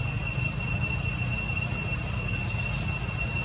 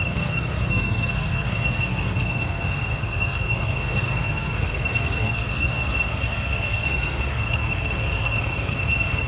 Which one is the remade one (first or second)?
second